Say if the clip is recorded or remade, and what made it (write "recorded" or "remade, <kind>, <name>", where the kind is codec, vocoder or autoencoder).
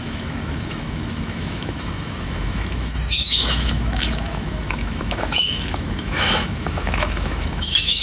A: remade, autoencoder, DAC-VAE